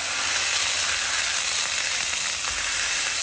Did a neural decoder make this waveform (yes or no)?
no